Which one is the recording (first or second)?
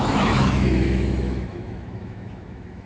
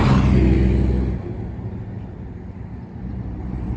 second